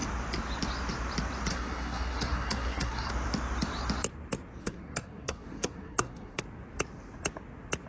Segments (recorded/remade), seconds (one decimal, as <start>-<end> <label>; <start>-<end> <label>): 0.0-1.5 recorded; 1.5-3.1 remade; 3.1-4.6 recorded; 4.6-6.4 remade; 6.4-7.9 recorded